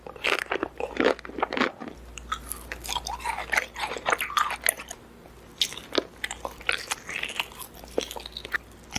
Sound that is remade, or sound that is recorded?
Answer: recorded